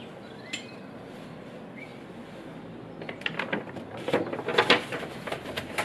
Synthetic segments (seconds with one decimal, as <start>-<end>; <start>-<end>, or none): none